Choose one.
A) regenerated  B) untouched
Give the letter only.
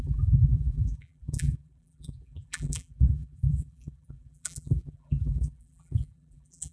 A